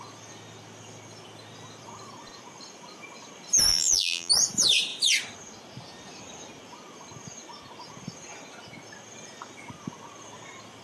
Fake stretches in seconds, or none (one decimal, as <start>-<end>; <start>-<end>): 3.7-4.3